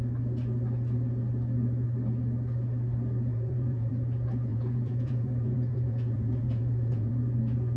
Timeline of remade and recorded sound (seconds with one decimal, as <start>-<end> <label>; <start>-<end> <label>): 0.0-3.3 recorded; 3.3-3.9 remade; 3.9-4.5 recorded; 4.5-7.1 remade; 7.1-7.8 recorded